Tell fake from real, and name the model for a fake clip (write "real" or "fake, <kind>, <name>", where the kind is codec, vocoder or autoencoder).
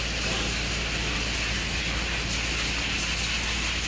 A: real